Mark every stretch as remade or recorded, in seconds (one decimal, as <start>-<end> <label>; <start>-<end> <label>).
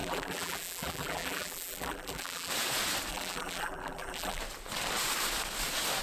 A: 0.0-2.5 remade; 2.5-3.1 recorded; 3.1-4.4 remade; 4.4-6.0 recorded